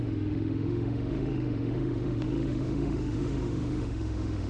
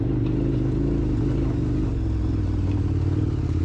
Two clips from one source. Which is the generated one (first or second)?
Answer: first